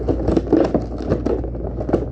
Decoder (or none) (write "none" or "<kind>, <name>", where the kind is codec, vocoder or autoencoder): none